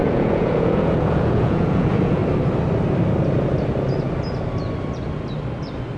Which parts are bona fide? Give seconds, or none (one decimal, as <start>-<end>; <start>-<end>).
2.2-6.0